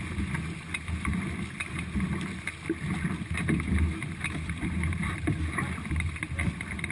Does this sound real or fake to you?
real